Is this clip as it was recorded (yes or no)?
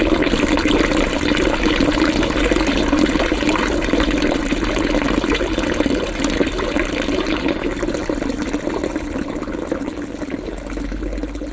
yes